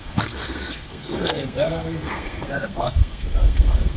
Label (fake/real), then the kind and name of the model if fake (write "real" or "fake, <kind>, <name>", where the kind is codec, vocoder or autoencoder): fake, codec, SNAC